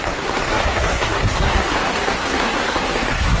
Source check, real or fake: fake